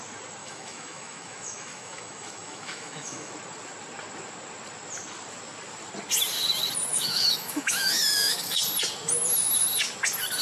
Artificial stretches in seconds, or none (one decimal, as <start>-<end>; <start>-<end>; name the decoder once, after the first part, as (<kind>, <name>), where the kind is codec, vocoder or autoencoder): 0.4-3.3 (autoencoder, DAC-VAE); 6.9-8.6